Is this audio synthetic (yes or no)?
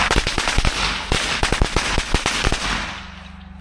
no